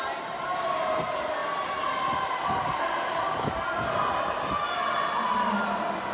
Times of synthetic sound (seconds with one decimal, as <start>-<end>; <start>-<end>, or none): none